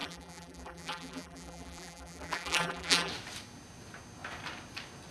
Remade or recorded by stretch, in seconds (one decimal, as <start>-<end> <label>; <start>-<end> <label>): 0.0-3.1 remade; 3.1-5.1 recorded